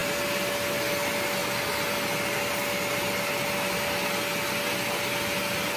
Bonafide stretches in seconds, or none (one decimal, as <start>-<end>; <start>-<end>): 0.0-5.8